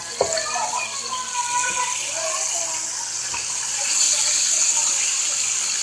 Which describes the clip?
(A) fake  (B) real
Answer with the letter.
B